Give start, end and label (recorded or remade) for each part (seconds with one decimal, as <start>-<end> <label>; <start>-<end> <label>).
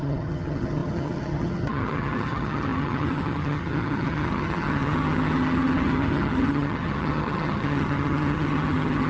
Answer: 0.0-9.1 remade